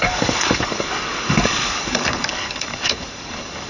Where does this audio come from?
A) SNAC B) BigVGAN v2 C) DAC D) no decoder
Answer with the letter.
C